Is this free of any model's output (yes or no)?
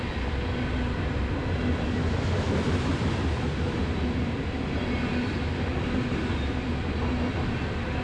yes